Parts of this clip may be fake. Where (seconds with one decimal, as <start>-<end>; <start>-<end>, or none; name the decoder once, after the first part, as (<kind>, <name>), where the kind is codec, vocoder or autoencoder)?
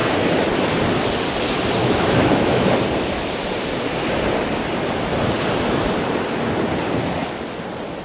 1.8-2.7 (autoencoder, DAC-VAE)